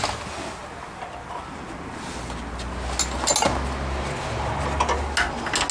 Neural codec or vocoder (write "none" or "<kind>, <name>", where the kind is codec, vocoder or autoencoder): none